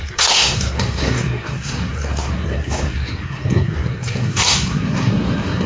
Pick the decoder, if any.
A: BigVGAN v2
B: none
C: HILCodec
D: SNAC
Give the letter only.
D